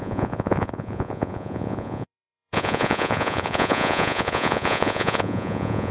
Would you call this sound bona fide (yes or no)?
no